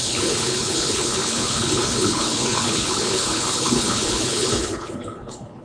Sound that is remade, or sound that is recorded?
remade